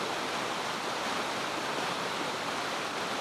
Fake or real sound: fake